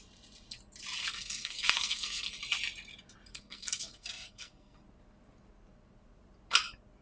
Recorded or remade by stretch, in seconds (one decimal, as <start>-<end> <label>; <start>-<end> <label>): 0.0-1.0 recorded; 1.0-2.4 remade; 2.4-3.3 recorded; 3.3-4.8 remade; 4.8-7.0 recorded